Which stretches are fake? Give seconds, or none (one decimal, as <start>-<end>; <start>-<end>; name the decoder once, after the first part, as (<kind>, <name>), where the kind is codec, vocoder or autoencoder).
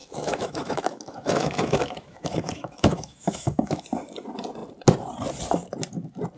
0.0-3.8 (autoencoder, DAC-VAE)